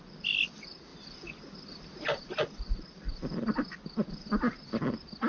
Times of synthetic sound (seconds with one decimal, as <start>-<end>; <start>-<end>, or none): 0.0-5.3